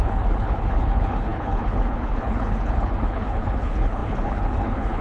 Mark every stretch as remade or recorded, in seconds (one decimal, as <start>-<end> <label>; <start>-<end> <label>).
0.0-5.0 remade